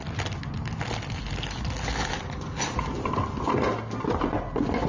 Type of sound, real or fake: real